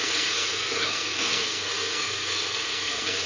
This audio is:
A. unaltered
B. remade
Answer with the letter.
B